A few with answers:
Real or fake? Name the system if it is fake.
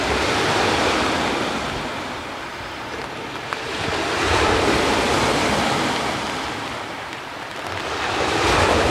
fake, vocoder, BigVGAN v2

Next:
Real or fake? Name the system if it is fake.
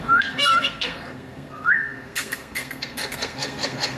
fake, codec, SNAC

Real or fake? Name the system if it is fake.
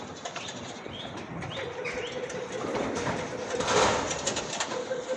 fake, vocoder, BigVGAN v2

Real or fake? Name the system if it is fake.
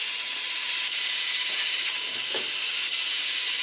fake, vocoder, BigVGAN v2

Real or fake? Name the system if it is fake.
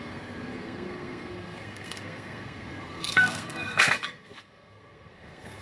fake, codec, SNAC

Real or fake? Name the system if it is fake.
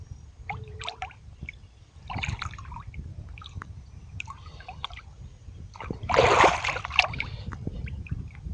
fake, vocoder, BigVGAN v2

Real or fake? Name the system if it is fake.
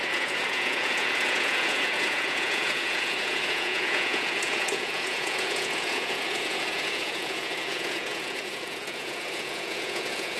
fake, vocoder, Vocos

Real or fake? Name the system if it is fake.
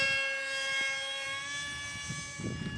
real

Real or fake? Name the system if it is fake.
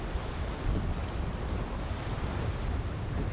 real